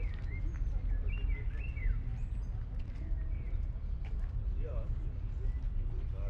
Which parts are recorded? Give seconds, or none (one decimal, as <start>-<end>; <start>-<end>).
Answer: 0.0-2.1; 4.9-6.3